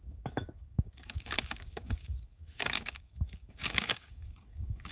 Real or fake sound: fake